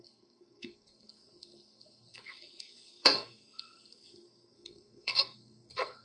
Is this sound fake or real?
fake